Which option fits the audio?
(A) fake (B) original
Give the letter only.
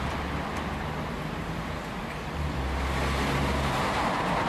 A